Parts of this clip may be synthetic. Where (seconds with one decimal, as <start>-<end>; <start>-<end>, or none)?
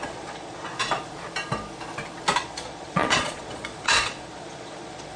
0.0-0.7; 2.4-5.2